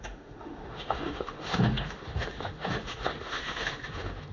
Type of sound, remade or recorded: remade